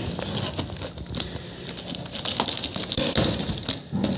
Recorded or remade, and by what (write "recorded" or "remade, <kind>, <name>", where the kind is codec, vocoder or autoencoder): recorded